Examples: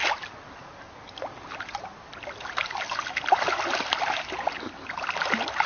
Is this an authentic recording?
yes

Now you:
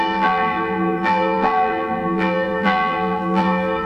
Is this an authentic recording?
no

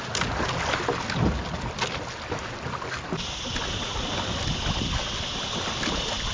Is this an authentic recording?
yes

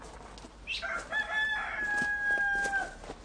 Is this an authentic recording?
yes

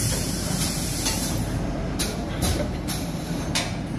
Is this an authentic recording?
no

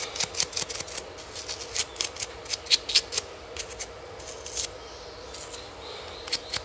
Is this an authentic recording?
yes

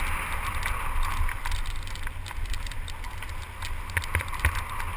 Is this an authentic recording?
yes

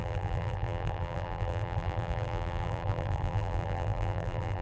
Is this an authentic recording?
no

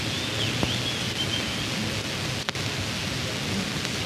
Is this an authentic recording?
yes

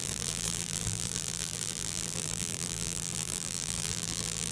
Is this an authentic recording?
no